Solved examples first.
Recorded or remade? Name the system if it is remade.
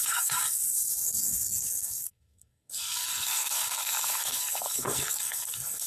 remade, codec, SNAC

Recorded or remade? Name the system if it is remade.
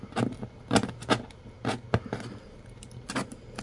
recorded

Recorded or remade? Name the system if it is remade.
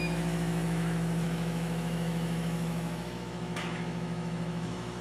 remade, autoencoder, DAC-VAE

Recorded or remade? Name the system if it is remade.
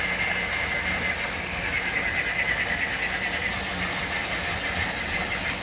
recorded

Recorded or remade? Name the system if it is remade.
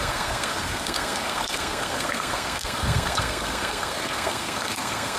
remade, codec, SNAC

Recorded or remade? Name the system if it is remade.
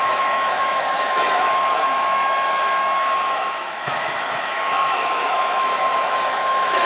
remade, autoencoder, DAC-VAE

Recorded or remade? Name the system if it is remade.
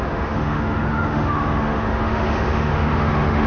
remade, autoencoder, DAC-VAE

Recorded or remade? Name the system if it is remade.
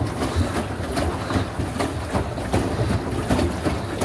recorded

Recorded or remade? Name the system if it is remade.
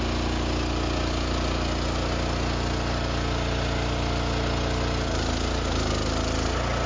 recorded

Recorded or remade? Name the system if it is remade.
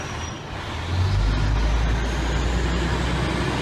recorded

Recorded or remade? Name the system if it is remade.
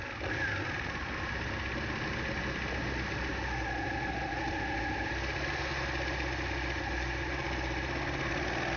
recorded